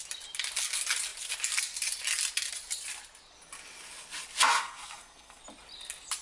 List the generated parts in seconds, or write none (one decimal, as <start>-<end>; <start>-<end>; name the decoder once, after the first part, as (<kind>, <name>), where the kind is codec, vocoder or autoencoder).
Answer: 4.5-5.4 (codec, SNAC)